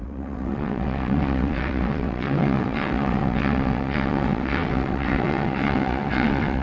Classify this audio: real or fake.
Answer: fake